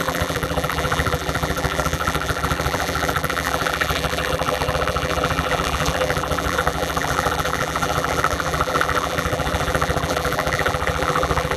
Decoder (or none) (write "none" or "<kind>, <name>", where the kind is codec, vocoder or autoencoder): vocoder, BigVGAN v2